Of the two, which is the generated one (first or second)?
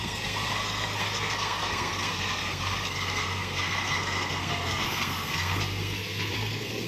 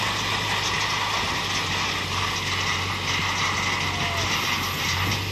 first